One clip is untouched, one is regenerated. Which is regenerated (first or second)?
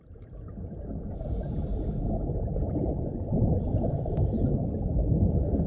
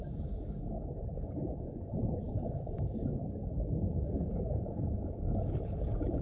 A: second